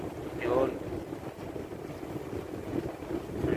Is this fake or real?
real